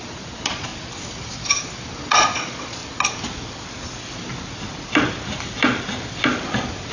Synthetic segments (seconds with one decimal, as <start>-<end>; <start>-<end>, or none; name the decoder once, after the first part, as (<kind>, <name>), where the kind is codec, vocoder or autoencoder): 0.0-0.7 (vocoder, Vocos); 2.0-2.8